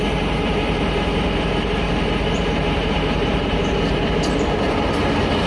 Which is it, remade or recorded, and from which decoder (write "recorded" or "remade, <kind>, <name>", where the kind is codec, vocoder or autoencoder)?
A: recorded